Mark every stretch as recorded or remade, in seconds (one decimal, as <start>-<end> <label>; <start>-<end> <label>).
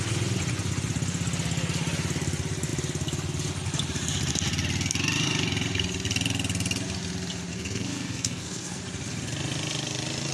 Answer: 0.0-7.5 recorded; 7.5-8.8 remade; 8.8-10.3 recorded